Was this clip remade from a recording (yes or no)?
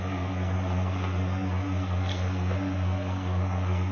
yes